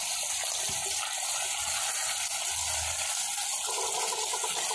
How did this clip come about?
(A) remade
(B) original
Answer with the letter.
B